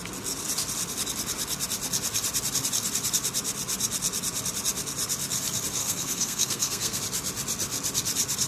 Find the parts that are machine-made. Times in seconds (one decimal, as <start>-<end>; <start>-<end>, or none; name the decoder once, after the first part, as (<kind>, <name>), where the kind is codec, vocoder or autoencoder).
5.8-7.0 (codec, SNAC)